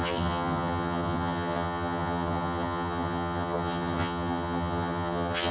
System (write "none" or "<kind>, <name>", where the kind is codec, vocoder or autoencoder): vocoder, HiFi-GAN